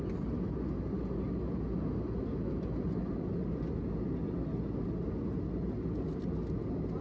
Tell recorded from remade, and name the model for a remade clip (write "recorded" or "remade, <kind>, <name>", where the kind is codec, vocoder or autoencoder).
recorded